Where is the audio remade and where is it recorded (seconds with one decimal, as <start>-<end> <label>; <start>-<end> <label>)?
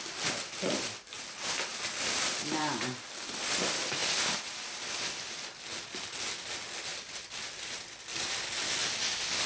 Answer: 0.0-1.7 recorded; 1.7-2.6 remade; 2.6-4.0 recorded; 4.0-4.5 remade; 4.5-6.9 recorded; 6.9-8.4 remade; 8.4-8.8 recorded; 8.8-9.5 remade